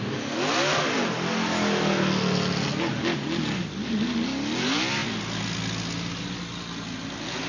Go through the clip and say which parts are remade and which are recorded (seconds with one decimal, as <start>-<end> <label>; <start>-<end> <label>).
0.0-7.5 recorded